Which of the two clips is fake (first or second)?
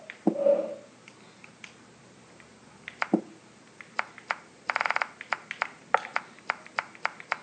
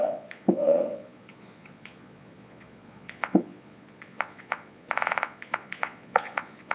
second